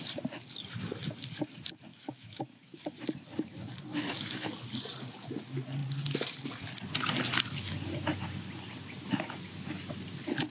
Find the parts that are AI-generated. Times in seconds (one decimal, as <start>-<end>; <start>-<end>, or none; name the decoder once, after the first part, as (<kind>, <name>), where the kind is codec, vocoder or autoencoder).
1.9-2.8 (autoencoder, DAC-VAE); 3.9-4.5